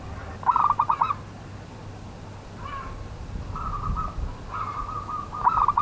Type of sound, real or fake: real